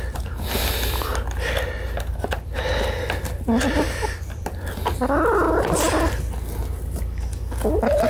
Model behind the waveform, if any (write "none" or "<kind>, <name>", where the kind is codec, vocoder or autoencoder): none